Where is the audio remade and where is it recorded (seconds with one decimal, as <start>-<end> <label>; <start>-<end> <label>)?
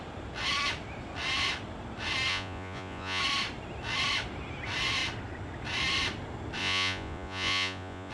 0.0-2.3 recorded; 2.3-3.2 remade; 3.2-6.6 recorded; 6.6-8.1 remade